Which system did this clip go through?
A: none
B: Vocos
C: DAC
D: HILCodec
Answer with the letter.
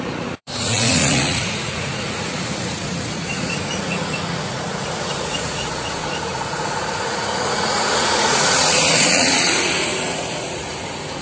B